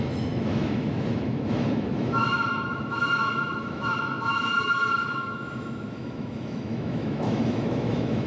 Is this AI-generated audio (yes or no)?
yes